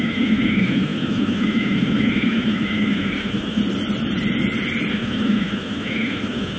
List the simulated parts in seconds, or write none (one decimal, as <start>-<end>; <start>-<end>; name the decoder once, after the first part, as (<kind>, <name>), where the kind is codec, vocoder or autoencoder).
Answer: 0.0-3.6 (autoencoder, DAC-VAE); 4.9-6.6